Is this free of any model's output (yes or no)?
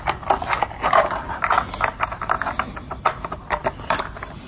yes